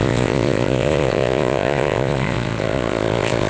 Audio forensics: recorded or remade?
remade